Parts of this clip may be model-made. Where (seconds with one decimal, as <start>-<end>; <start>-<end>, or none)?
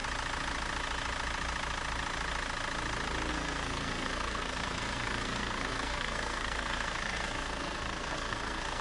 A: 3.3-8.8